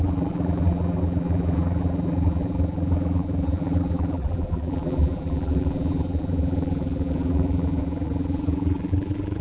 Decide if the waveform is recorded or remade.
remade